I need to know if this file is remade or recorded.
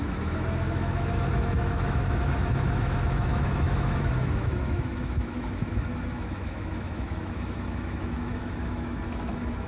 remade